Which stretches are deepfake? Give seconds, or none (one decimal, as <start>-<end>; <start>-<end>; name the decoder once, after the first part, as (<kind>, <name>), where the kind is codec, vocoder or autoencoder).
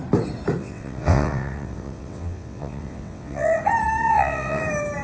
0.6-3.6 (vocoder, WaveNeXt); 4.0-4.6